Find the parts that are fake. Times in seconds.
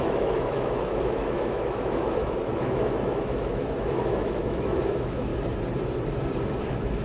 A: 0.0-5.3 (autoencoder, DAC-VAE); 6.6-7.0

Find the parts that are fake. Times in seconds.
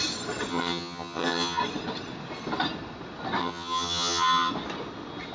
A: 0.5-1.6 (vocoder, HiFi-GAN); 3.4-4.5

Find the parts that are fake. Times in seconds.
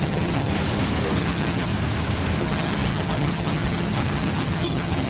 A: 0.0-0.5 (vocoder, HiFi-GAN); 1.2-1.7; 2.4-5.1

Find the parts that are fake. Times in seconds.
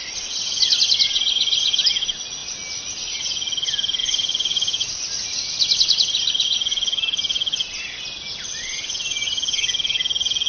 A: 4.0-4.9 (vocoder, Vocos)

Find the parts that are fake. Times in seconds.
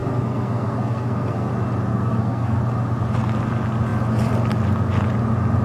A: 0.0-1.5 (codec, SNAC); 1.9-2.6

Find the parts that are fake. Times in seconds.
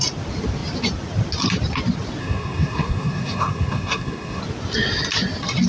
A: 2.2-4.4 (codec, SNAC)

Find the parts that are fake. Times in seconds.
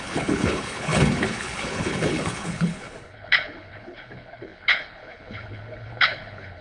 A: 0.0-6.6 (codec, HILCodec)